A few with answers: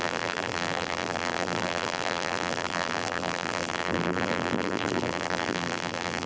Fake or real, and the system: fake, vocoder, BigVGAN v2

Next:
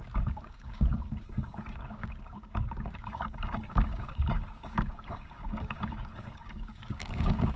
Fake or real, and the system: fake, codec, DAC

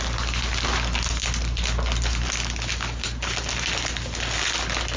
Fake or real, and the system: real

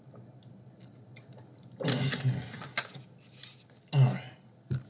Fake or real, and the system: real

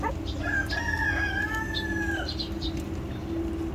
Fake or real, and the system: real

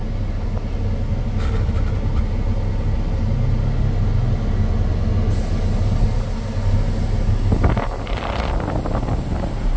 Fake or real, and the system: real